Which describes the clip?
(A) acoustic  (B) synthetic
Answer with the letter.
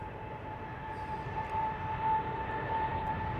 B